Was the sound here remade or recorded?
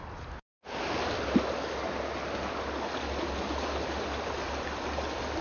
recorded